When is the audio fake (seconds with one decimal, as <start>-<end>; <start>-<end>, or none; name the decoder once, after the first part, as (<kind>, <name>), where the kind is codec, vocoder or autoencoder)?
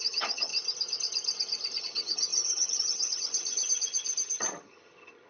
0.0-0.5 (vocoder, HiFi-GAN); 1.8-5.3